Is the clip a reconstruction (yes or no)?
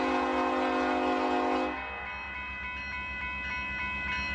no